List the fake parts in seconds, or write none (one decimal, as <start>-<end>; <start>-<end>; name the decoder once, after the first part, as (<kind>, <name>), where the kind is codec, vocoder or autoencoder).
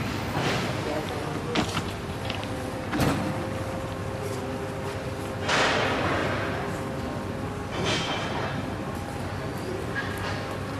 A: none